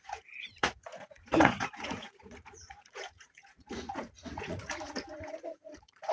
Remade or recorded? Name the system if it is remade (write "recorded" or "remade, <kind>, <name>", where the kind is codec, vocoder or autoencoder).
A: remade, vocoder, Vocos